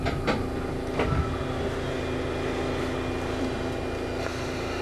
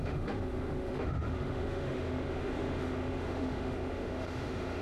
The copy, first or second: second